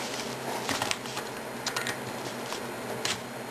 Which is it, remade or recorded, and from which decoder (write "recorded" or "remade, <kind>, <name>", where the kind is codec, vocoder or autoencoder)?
recorded